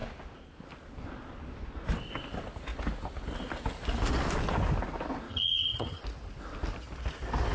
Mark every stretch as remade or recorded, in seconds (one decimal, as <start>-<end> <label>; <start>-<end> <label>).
0.0-5.3 recorded; 5.3-6.0 remade; 6.0-7.5 recorded